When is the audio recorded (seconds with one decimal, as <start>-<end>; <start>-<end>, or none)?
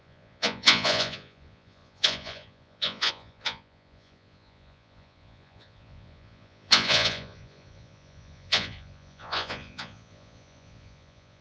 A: none